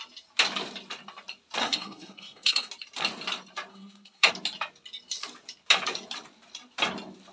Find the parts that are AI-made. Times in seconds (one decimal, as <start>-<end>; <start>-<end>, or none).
1.6-2.7; 3.7-4.3